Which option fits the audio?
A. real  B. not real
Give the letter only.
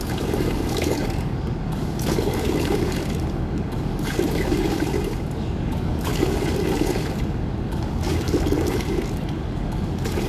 B